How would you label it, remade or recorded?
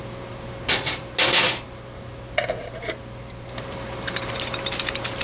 recorded